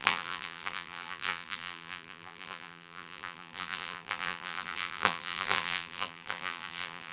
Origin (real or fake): fake